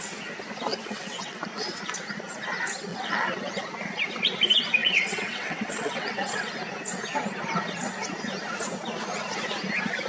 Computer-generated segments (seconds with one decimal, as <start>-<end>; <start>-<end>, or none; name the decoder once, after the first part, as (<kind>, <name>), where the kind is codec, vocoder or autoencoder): 0.7-1.4 (vocoder, WaveNeXt); 2.9-3.5; 4.8-6.5